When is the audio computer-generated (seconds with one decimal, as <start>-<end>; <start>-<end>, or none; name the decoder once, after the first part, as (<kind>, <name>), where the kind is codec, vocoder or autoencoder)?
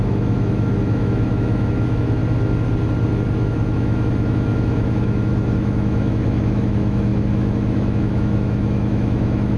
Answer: 0.0-2.2 (autoencoder, DAC-VAE); 3.3-9.6